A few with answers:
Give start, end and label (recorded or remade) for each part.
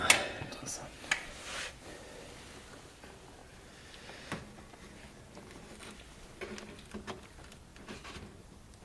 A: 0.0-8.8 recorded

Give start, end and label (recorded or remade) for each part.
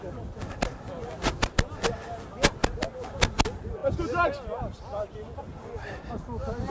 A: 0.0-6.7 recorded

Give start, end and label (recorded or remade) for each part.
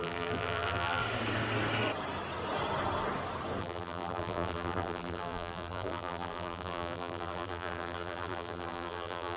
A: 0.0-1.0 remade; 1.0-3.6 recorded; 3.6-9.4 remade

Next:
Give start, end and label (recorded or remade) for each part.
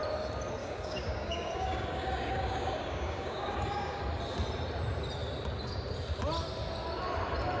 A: 0.0-0.6 recorded; 0.6-4.0 remade; 4.0-7.6 recorded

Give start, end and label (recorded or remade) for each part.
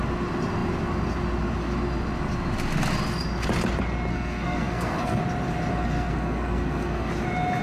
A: 0.0-4.1 recorded; 4.1-5.2 remade; 5.2-5.7 recorded; 5.7-7.1 remade; 7.1-7.6 recorded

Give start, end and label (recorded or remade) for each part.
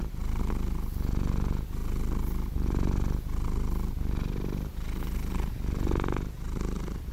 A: 0.0-1.8 recorded; 1.8-4.7 remade; 4.7-7.1 recorded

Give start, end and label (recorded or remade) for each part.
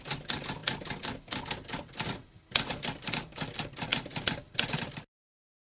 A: 0.0-0.6 remade; 0.6-3.1 recorded; 3.1-3.9 remade; 3.9-4.4 recorded; 4.4-5.6 remade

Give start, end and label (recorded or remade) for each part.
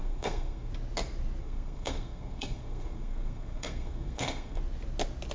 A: 0.0-0.7 remade; 0.7-1.4 recorded; 1.4-4.6 remade; 4.6-5.3 recorded